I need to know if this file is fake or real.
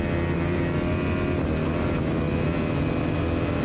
real